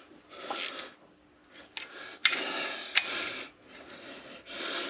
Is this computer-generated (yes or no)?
no